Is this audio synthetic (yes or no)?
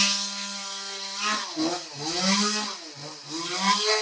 no